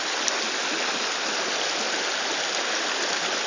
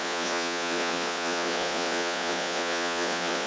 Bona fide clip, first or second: first